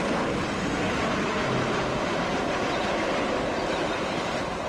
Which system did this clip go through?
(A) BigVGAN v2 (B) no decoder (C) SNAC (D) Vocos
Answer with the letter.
B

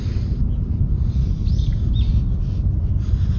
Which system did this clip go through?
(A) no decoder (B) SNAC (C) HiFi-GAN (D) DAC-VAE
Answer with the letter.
A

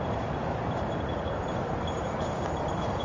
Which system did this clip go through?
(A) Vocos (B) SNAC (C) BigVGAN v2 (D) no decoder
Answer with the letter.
C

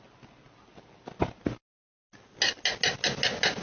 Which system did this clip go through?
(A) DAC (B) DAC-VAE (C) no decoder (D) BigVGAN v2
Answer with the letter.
C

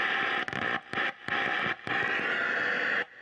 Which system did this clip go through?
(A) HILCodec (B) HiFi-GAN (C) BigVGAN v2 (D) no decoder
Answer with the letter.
D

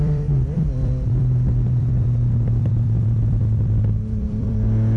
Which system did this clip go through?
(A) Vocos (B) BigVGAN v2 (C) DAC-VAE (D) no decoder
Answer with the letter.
B